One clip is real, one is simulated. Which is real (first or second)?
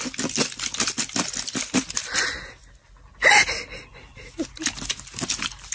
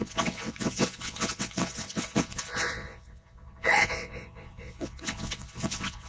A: first